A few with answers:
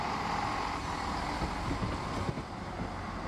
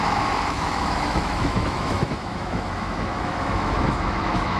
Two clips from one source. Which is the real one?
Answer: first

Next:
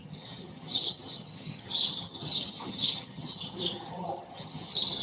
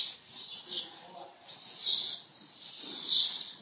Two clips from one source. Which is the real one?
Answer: second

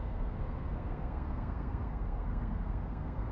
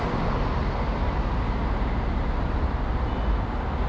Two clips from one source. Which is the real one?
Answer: second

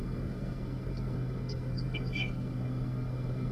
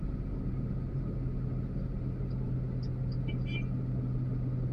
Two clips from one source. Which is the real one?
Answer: second